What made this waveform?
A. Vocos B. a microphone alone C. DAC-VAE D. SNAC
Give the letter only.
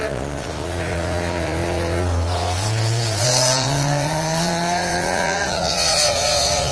A